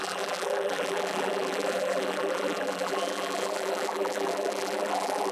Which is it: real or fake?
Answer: fake